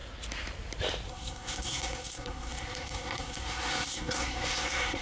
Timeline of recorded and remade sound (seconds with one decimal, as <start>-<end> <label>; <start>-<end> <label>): 0.0-1.1 recorded; 1.1-5.0 remade

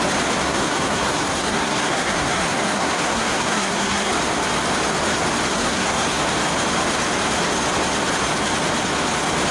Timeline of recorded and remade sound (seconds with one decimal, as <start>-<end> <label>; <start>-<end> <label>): 0.0-0.4 recorded; 0.4-4.1 remade; 4.1-5.5 recorded; 5.5-6.2 remade; 6.2-9.5 recorded